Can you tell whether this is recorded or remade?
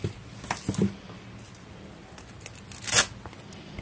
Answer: recorded